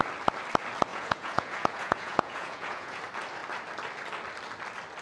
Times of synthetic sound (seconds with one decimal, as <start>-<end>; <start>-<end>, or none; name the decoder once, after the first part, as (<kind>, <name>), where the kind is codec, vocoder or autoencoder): 0.9-3.0 (vocoder, Vocos)